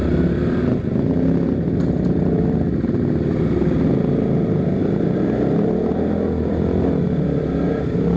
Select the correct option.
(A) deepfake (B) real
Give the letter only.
B